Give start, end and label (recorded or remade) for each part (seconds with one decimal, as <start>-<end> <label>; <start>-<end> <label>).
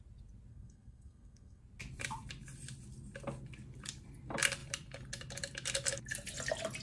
0.0-0.5 recorded; 0.5-1.6 remade; 1.6-6.8 recorded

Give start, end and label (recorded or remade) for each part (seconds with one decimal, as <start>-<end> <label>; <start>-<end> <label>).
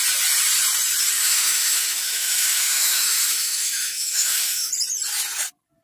0.0-1.2 recorded; 1.2-4.7 remade; 4.7-5.8 recorded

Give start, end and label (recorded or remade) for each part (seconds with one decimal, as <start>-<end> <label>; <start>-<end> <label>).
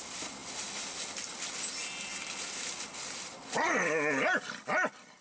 0.0-5.2 recorded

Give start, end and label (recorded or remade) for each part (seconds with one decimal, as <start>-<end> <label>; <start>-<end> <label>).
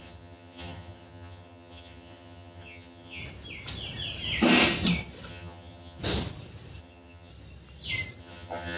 0.0-3.2 remade; 3.2-5.3 recorded; 5.3-6.0 remade; 6.0-6.8 recorded; 6.8-7.3 remade; 7.3-8.2 recorded; 8.2-8.8 remade